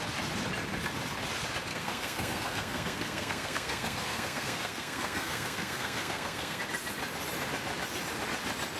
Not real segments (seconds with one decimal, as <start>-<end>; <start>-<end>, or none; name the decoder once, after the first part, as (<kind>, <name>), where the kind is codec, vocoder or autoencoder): 1.7-6.6 (codec, SNAC)